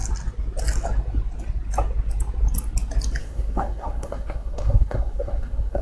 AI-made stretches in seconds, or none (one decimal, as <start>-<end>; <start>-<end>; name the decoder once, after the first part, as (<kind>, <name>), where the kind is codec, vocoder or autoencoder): 3.2-5.8 (codec, SNAC)